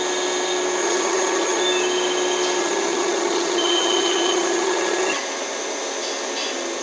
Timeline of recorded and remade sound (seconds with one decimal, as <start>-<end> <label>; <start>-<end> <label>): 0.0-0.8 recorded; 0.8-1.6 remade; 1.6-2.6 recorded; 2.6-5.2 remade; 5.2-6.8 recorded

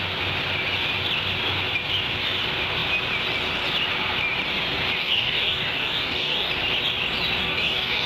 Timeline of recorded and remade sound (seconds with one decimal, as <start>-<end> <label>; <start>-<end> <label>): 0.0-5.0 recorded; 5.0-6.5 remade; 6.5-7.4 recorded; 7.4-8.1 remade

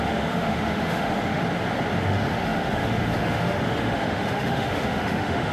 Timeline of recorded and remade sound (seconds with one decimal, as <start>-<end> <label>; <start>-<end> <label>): 0.0-1.4 remade; 1.4-2.0 recorded; 2.0-5.5 remade